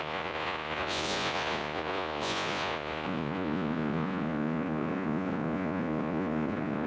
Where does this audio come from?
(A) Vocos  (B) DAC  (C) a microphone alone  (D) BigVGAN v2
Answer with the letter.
A